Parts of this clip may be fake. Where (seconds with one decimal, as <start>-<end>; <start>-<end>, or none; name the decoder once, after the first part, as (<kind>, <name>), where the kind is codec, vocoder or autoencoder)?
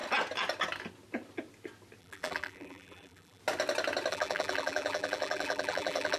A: 2.0-3.4 (vocoder, BigVGAN v2); 4.1-6.2